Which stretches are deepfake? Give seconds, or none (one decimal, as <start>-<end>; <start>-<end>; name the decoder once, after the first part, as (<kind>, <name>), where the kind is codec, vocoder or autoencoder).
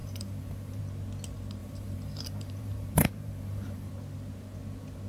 0.0-0.8 (vocoder, BigVGAN v2); 1.6-3.9